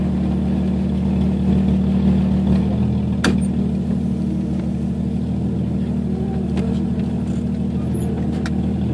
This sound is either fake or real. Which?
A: real